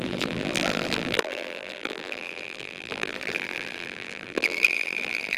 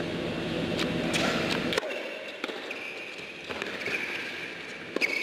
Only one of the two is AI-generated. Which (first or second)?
first